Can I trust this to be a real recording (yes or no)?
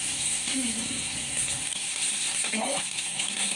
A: no